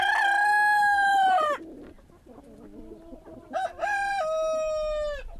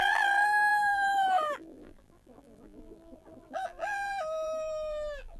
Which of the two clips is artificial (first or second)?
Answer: second